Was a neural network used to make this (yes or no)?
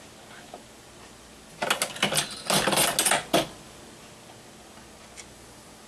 no